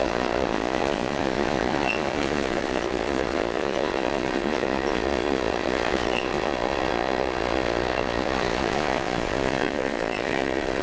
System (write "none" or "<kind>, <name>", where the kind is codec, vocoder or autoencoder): vocoder, Vocos